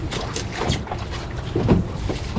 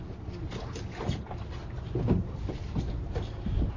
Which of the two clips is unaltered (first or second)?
second